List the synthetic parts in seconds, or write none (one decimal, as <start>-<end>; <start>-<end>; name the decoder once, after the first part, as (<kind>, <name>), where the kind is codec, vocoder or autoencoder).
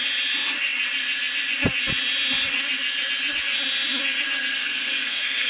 4.5-5.5 (codec, SNAC)